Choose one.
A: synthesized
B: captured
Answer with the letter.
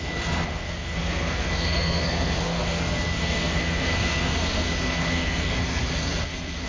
A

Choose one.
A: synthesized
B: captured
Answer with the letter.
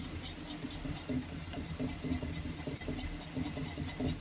B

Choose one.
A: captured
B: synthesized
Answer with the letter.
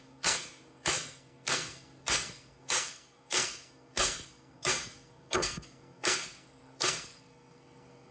B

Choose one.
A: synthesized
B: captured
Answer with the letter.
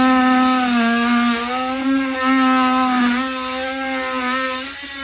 B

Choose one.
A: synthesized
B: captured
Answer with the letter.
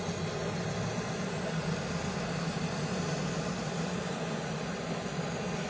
B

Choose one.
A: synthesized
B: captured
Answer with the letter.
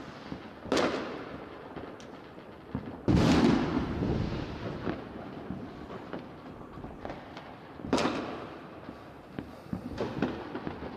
B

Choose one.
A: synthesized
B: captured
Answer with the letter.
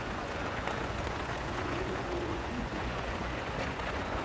A